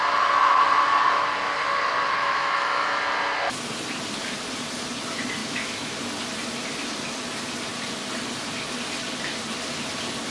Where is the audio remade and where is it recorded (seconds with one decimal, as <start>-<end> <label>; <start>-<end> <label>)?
0.0-2.2 recorded; 2.2-3.0 remade; 3.0-5.4 recorded; 5.4-5.9 remade; 5.9-10.3 recorded